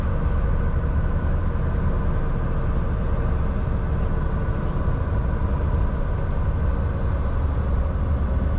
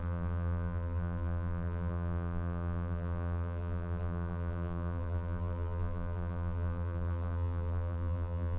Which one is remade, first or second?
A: second